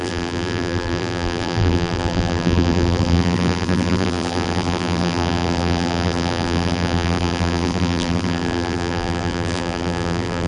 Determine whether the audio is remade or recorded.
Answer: remade